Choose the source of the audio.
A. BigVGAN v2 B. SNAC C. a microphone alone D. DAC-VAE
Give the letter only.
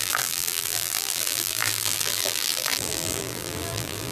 A